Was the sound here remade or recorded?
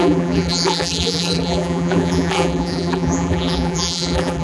remade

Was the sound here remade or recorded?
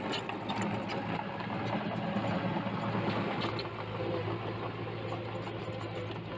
recorded